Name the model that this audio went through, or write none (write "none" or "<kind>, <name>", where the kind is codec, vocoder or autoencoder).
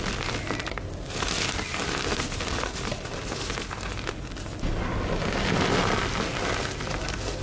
none